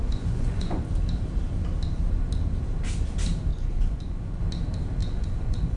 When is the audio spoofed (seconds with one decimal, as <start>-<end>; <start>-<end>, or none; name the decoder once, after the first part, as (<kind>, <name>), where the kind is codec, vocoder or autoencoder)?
0.0-0.8 (vocoder, Vocos); 3.5-4.4; 5.0-5.8